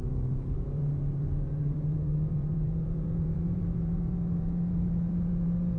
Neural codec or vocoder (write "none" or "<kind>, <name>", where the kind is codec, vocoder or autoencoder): vocoder, BigVGAN v2